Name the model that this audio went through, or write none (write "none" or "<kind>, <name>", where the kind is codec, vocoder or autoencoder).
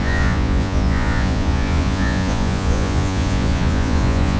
vocoder, Vocos